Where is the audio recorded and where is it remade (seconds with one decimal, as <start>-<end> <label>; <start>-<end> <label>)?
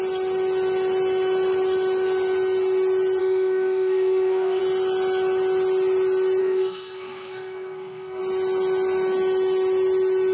0.0-3.2 recorded; 3.2-4.6 remade; 4.6-6.4 recorded; 6.4-8.2 remade; 8.2-10.3 recorded